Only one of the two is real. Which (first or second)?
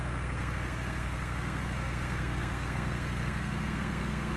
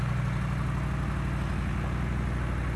second